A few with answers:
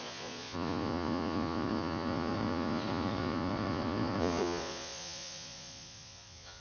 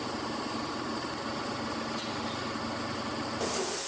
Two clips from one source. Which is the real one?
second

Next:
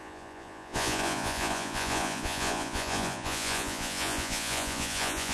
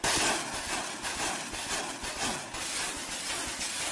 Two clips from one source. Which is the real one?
second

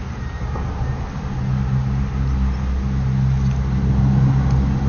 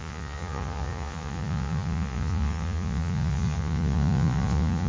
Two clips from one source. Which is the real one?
first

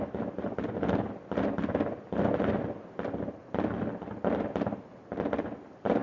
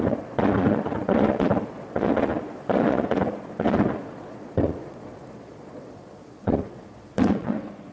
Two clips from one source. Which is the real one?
first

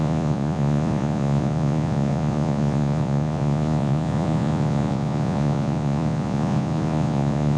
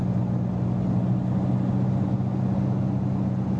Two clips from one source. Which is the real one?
second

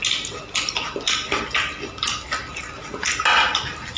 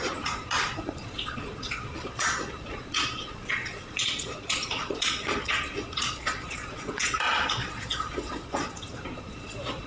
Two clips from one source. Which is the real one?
first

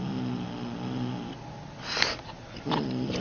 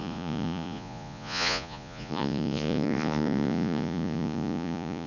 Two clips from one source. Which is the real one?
first